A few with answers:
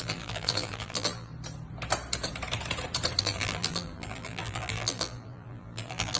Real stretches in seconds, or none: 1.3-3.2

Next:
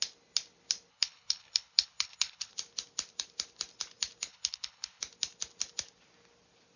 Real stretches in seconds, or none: 0.0-0.9; 2.5-4.3; 5.0-6.8

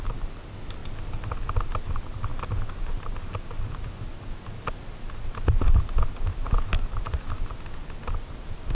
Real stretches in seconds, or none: 0.0-8.7

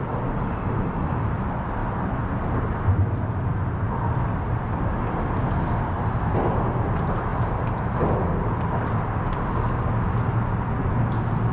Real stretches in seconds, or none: 0.0-11.5